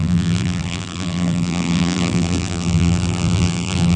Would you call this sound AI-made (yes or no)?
yes